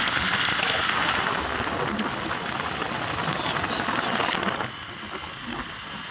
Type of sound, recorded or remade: recorded